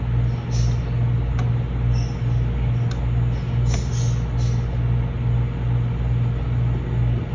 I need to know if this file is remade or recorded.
recorded